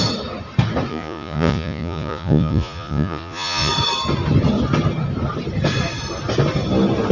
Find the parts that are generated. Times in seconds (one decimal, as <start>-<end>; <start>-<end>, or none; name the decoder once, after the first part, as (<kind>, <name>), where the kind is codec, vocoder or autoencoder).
0.9-3.7 (vocoder, Vocos)